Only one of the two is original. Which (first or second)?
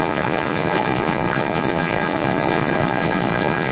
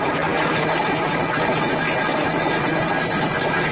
second